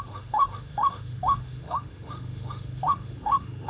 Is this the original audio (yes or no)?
no